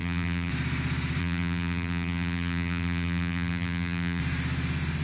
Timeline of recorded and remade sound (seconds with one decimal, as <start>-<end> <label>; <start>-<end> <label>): 0.0-0.5 remade; 0.5-1.2 recorded; 1.2-4.2 remade; 4.2-5.0 recorded